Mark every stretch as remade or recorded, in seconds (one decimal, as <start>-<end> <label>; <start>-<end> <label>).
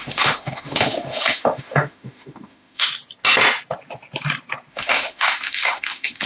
0.0-2.9 remade; 2.9-4.7 recorded; 4.7-6.3 remade